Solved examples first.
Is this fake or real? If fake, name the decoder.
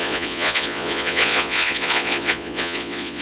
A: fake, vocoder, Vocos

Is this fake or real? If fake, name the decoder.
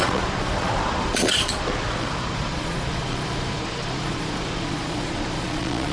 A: fake, vocoder, Vocos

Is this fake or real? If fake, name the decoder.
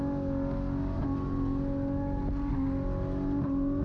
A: real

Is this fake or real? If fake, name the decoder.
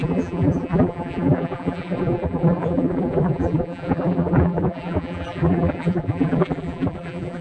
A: fake, vocoder, BigVGAN v2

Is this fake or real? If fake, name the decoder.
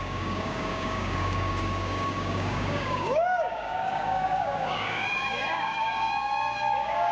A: fake, codec, DAC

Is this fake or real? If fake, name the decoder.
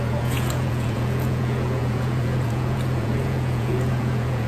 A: fake, vocoder, Vocos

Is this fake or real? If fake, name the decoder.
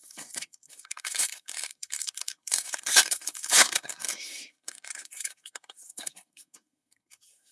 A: fake, codec, SNAC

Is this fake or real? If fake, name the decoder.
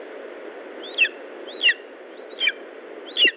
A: real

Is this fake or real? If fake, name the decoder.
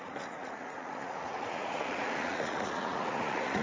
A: fake, vocoder, Vocos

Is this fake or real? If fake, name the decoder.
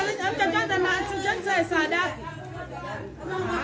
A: real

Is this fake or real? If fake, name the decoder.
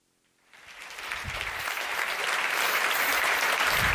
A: real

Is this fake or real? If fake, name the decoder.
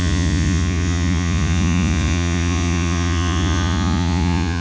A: fake, vocoder, Vocos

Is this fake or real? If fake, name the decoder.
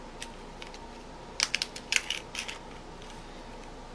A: real